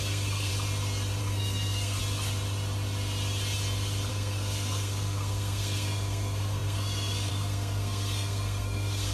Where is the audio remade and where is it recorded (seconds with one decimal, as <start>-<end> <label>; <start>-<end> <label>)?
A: 0.0-0.5 remade; 0.5-1.2 recorded; 1.2-2.0 remade; 2.0-4.1 recorded; 4.1-9.1 remade